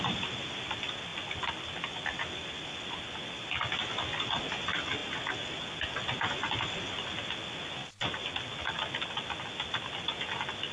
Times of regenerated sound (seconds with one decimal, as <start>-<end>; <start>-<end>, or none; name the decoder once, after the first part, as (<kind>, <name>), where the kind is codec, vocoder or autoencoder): none